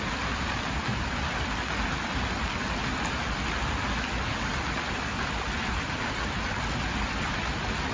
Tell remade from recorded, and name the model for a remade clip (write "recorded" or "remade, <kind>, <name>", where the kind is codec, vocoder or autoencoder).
recorded